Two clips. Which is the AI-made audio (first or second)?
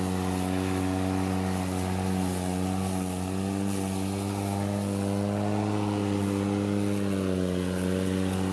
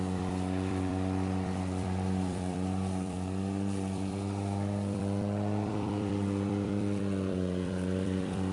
second